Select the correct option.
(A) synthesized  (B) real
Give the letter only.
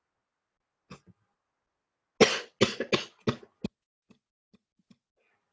B